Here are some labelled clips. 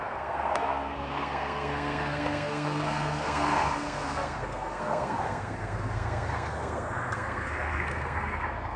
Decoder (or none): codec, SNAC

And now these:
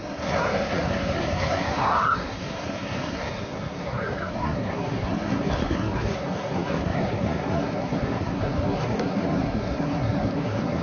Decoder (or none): codec, SNAC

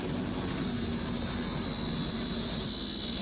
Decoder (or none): none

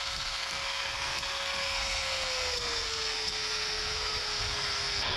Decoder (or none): codec, SNAC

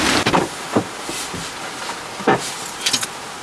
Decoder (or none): none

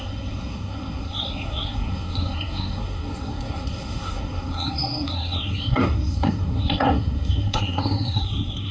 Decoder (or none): codec, SNAC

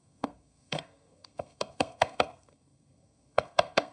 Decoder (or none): codec, SNAC